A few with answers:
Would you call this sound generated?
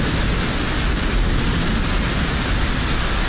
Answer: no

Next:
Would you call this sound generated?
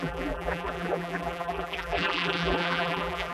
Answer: yes